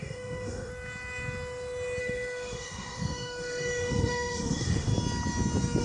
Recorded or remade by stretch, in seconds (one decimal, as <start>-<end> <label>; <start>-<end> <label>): 0.0-0.7 remade; 0.7-2.0 recorded; 2.0-4.9 remade; 4.9-5.8 recorded